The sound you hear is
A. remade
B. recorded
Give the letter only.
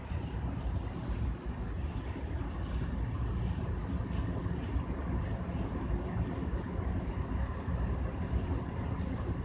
B